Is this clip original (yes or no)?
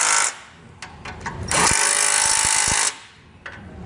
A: yes